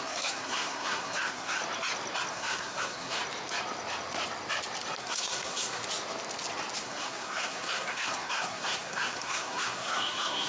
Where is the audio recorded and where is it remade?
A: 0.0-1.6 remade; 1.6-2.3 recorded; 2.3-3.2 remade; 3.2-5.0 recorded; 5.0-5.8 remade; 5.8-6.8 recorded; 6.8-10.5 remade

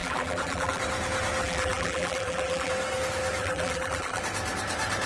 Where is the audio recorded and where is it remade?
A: 0.0-0.8 remade; 0.8-1.4 recorded; 1.4-2.7 remade; 2.7-3.4 recorded; 3.4-4.2 remade; 4.2-5.1 recorded

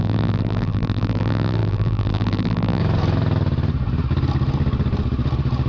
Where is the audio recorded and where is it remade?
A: 0.0-2.8 remade; 2.8-5.7 recorded

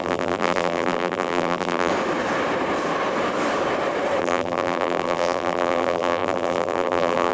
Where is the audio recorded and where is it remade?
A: 0.0-1.9 remade; 1.9-4.2 recorded; 4.2-7.3 remade

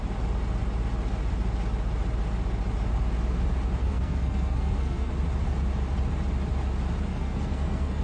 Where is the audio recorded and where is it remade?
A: 0.0-3.8 recorded; 3.8-5.1 remade; 5.1-7.1 recorded; 7.1-8.0 remade

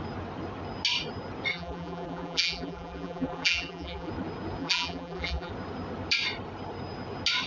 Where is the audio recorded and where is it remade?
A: 0.0-1.5 recorded; 1.5-4.1 remade; 4.1-4.6 recorded; 4.6-5.5 remade; 5.5-7.5 recorded

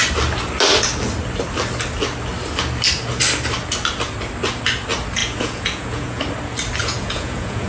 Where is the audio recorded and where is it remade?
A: 0.0-5.2 recorded; 5.2-6.2 remade; 6.2-6.8 recorded; 6.8-7.7 remade

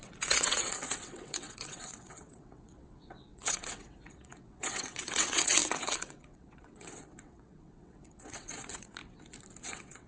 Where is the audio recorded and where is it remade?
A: 0.0-9.0 remade; 9.0-9.6 recorded; 9.6-10.1 remade